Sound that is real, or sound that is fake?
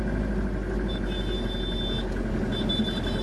real